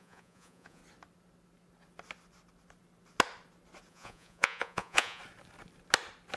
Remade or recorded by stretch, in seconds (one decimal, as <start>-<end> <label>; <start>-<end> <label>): 0.0-0.8 remade; 0.8-3.9 recorded; 3.9-5.2 remade; 5.2-6.4 recorded